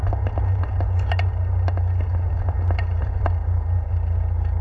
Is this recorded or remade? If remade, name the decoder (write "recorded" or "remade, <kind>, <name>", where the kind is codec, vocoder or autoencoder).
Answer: recorded